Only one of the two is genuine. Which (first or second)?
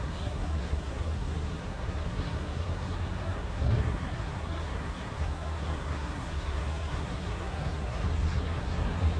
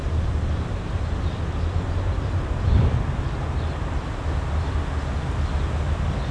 second